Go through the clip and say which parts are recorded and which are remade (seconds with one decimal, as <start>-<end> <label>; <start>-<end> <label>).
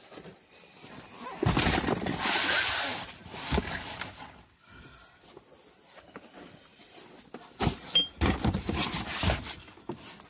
0.0-3.2 recorded; 3.2-4.1 remade; 4.1-6.7 recorded; 6.7-7.8 remade; 7.8-10.3 recorded